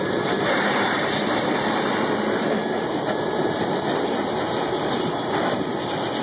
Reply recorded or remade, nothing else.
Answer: remade